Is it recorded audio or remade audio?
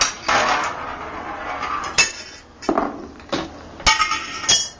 recorded